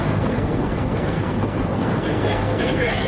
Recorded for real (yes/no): no